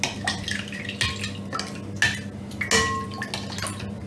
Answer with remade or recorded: recorded